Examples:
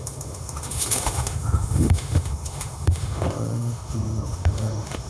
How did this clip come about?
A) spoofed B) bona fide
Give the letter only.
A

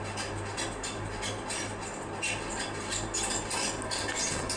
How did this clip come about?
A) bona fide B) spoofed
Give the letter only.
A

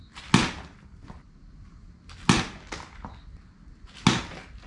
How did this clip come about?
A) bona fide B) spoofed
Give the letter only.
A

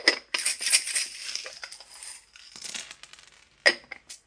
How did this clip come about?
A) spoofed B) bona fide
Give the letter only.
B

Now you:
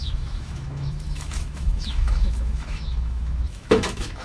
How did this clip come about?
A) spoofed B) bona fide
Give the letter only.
A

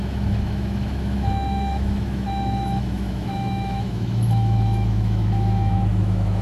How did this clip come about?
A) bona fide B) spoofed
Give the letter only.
B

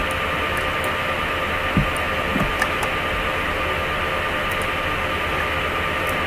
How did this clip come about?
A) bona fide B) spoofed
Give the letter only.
A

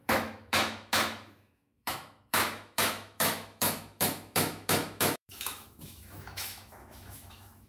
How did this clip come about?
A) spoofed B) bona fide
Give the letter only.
A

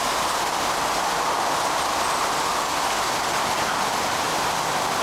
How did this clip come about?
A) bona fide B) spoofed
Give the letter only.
A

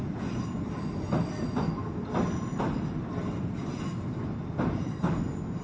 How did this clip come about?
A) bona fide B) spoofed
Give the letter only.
A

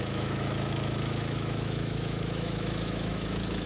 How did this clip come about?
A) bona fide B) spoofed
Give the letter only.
B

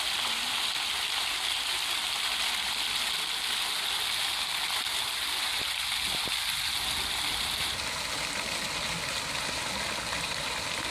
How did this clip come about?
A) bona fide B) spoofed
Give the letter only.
A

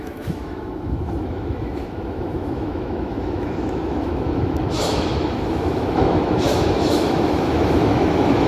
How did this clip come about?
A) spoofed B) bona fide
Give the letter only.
A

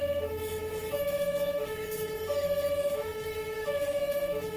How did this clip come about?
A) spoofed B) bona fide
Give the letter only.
A